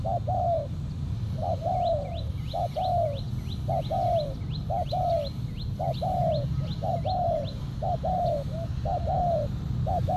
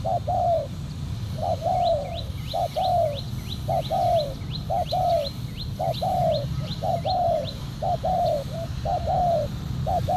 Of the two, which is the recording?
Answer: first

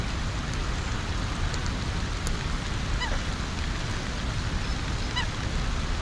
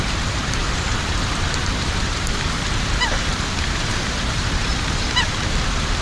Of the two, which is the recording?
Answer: first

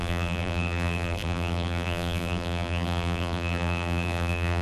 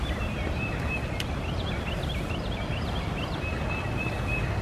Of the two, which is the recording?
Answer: second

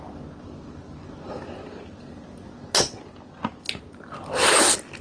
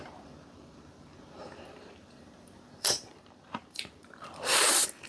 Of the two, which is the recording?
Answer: first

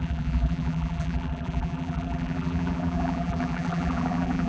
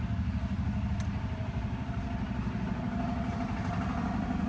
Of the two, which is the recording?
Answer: second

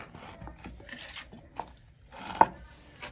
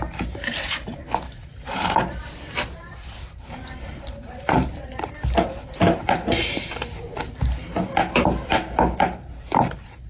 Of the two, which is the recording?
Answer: first